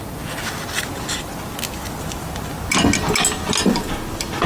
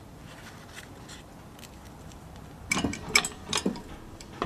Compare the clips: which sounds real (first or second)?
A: first